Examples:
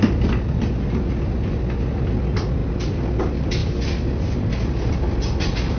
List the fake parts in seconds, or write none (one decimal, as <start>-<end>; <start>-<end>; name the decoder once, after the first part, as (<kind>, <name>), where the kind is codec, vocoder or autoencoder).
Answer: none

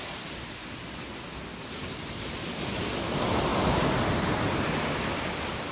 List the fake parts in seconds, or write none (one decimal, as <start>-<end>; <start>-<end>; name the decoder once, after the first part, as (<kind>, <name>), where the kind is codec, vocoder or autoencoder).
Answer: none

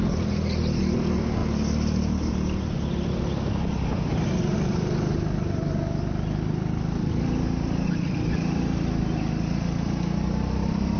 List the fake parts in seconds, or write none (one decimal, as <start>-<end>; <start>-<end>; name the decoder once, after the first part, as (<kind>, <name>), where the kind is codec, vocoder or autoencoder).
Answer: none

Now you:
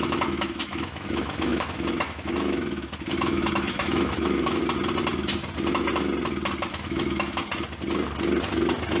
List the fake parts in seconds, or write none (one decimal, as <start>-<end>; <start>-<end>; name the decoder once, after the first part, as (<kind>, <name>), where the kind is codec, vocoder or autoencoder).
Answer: 0.0-4.6 (autoencoder, DAC-VAE); 6.7-7.4